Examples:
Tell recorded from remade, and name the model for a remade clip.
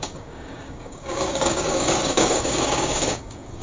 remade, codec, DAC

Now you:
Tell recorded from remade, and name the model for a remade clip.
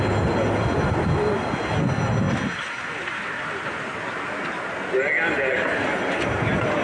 recorded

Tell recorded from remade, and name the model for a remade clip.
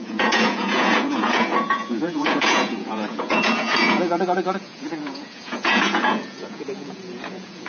remade, vocoder, Vocos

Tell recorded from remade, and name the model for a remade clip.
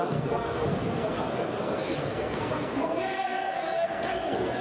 remade, codec, SNAC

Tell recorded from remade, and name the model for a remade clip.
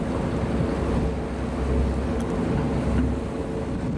recorded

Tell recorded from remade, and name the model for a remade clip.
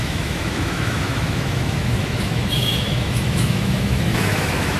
remade, autoencoder, DAC-VAE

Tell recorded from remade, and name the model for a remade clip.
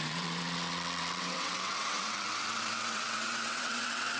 remade, vocoder, WaveNeXt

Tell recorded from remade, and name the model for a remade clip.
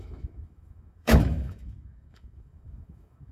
remade, autoencoder, DAC-VAE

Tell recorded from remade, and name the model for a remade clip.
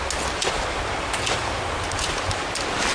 recorded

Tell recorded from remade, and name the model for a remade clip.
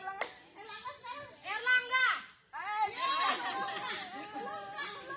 recorded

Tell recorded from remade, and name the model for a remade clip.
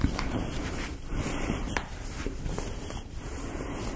remade, vocoder, BigVGAN v2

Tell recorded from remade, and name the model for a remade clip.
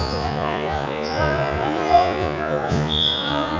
remade, vocoder, Vocos